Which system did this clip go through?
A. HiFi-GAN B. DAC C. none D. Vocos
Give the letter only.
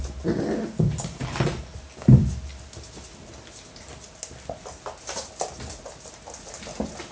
C